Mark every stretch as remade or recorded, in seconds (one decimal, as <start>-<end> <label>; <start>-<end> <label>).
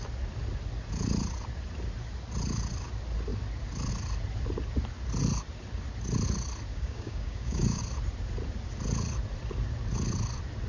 0.0-6.7 recorded; 6.7-7.8 remade; 7.8-10.7 recorded